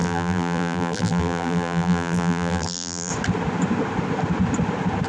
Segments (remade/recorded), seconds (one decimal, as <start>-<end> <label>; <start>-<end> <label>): 0.0-3.1 remade; 3.1-5.1 recorded